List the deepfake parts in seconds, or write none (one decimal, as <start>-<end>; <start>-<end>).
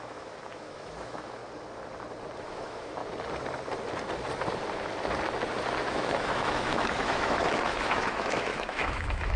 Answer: 0.0-1.4; 2.4-3.0; 5.9-9.4